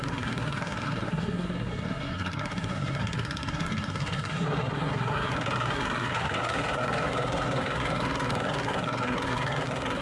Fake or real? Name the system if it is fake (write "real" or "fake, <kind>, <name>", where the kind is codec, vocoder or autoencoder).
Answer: fake, codec, SNAC